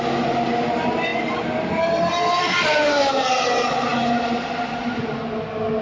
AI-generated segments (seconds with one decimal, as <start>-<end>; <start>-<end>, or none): none